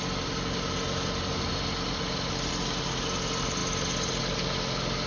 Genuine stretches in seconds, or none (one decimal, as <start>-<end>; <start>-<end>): 0.0-5.1